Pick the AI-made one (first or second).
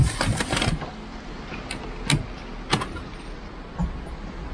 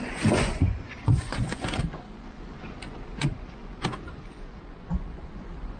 second